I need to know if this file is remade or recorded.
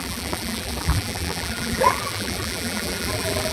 remade